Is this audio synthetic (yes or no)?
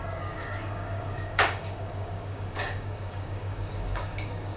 yes